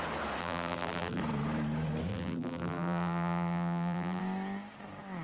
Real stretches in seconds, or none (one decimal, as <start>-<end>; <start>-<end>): 0.0-0.4; 1.2-2.1; 4.2-5.2